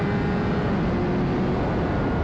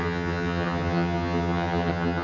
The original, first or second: first